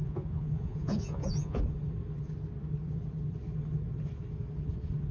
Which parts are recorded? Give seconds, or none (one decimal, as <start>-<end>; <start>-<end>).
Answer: 1.6-5.1